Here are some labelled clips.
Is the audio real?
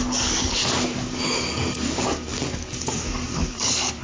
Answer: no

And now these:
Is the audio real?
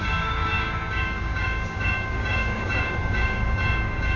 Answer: no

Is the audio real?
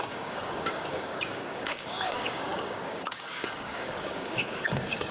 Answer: no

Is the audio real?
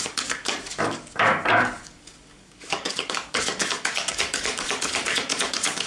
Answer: no